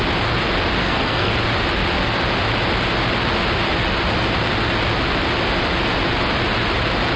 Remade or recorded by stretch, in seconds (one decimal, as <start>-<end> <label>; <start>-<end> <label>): 0.0-0.8 recorded; 0.8-1.3 remade; 1.3-7.2 recorded